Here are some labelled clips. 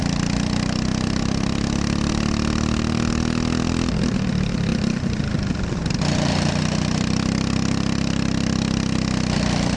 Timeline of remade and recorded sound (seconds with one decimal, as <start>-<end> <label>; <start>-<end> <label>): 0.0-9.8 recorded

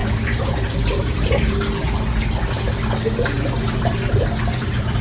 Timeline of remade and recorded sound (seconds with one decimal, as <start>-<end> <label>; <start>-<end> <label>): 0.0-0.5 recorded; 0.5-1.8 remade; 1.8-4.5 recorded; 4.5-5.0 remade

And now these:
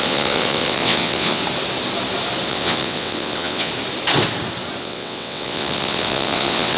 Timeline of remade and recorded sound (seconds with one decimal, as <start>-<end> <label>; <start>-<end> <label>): 0.0-1.4 remade; 1.4-2.5 recorded; 2.5-3.7 remade; 3.7-4.8 recorded; 4.8-6.8 remade

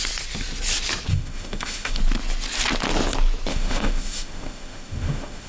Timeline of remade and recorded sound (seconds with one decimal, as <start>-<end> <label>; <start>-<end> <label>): 0.0-1.1 recorded; 1.1-2.0 remade; 2.0-3.5 recorded; 3.5-5.5 remade

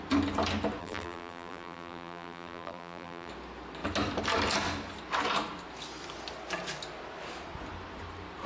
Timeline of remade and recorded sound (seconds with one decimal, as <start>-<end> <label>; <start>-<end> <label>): 0.0-0.8 recorded; 0.8-3.3 remade; 3.3-8.5 recorded